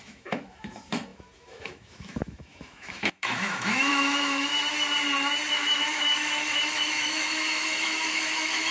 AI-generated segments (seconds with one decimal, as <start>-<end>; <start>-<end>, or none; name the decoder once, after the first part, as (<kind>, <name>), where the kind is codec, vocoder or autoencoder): 0.0-4.5 (autoencoder, DAC-VAE); 5.5-8.7